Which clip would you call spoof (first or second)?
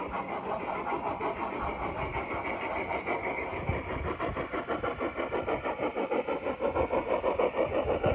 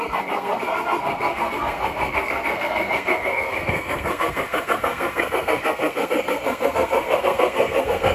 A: second